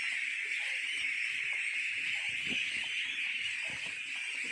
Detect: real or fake real